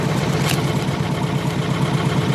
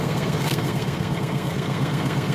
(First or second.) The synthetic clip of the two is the second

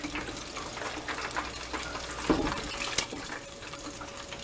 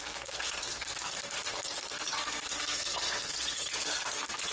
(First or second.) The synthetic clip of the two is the second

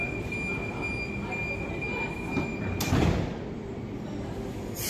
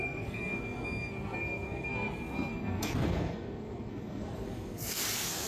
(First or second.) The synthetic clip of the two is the second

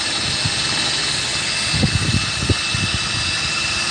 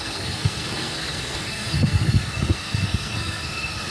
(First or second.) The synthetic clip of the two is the second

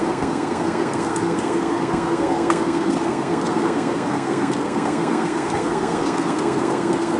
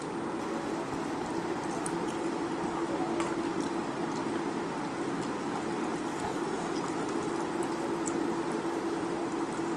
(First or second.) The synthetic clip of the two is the first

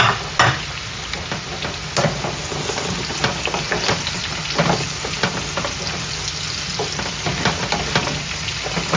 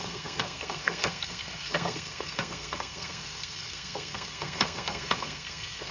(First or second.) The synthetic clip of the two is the second